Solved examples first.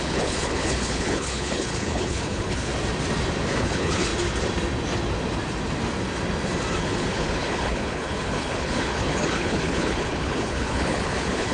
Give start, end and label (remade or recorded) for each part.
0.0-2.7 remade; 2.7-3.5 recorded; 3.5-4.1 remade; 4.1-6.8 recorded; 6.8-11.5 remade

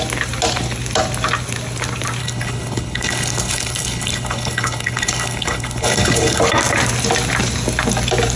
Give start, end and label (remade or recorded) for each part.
0.0-2.2 recorded; 2.2-6.4 remade; 6.4-8.4 recorded

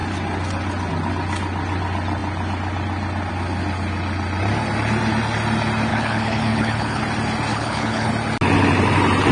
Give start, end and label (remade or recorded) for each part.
0.0-5.9 recorded; 5.9-7.0 remade; 7.0-7.5 recorded; 7.5-8.1 remade; 8.1-9.3 recorded

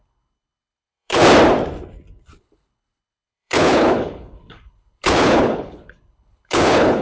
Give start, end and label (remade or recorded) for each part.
0.0-1.2 remade; 1.2-2.4 recorded; 2.4-7.0 remade

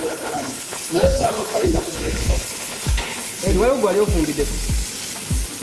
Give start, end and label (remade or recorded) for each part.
0.0-3.4 remade; 3.4-5.6 recorded

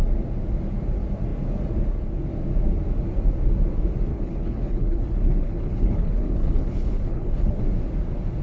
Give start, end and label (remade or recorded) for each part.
0.0-4.1 recorded; 4.1-7.6 remade; 7.6-8.4 recorded

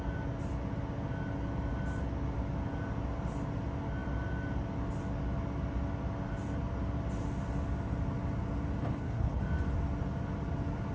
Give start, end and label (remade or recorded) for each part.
0.0-8.8 recorded; 8.8-9.4 remade; 9.4-10.9 recorded

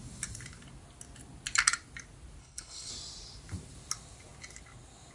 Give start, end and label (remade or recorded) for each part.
0.0-2.4 recorded; 2.4-2.9 remade; 2.9-5.1 recorded